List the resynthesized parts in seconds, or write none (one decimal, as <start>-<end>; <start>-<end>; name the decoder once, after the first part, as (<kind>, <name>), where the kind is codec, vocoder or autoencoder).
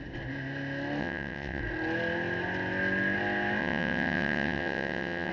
1.0-1.6 (vocoder, WaveNeXt); 3.6-5.3